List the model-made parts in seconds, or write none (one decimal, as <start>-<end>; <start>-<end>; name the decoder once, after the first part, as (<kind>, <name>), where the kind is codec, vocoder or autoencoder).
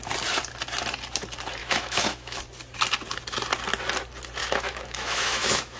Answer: 1.6-2.4 (autoencoder, DAC-VAE); 4.4-5.8